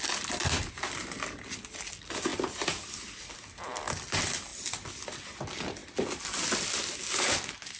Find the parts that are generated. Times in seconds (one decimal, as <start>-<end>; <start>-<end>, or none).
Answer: none